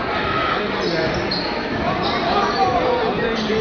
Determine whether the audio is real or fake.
real